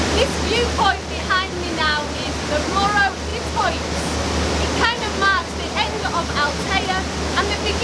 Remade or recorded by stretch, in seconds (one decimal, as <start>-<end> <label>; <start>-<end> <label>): 0.0-7.8 recorded